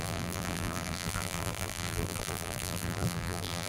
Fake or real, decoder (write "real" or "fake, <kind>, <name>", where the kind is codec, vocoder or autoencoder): fake, vocoder, BigVGAN v2